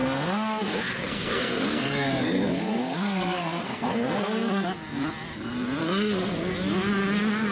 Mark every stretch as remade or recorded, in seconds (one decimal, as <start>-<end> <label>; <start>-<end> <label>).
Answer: 0.0-4.5 remade; 4.5-5.8 recorded; 5.8-6.5 remade; 6.5-7.5 recorded